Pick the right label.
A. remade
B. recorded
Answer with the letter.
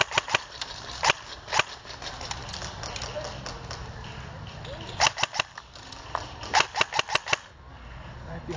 B